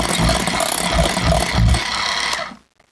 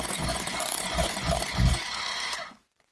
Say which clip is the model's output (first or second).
second